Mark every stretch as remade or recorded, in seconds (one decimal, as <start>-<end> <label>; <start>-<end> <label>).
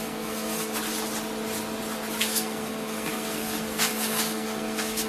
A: 0.0-0.7 remade; 0.7-2.2 recorded; 2.2-5.1 remade